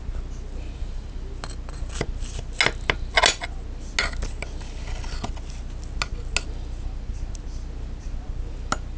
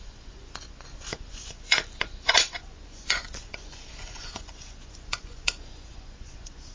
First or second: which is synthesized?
second